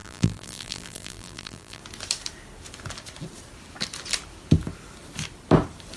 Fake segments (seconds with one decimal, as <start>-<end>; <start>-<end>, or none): 0.0-1.8